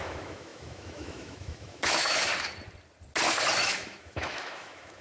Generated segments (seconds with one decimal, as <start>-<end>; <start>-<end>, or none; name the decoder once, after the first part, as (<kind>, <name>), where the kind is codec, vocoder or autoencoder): 0.0-2.3 (autoencoder, DAC-VAE); 3.6-5.0